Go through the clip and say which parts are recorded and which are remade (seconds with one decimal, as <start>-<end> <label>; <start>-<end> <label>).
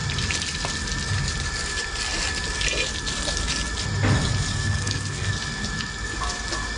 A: 0.0-4.5 recorded; 4.5-5.3 remade; 5.3-6.8 recorded